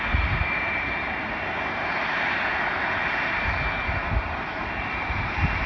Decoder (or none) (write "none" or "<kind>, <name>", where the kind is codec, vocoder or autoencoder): vocoder, BigVGAN v2